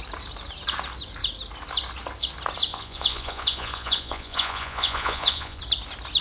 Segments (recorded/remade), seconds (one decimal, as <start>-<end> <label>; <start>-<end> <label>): 0.0-2.7 recorded; 2.7-5.6 remade; 5.6-6.2 recorded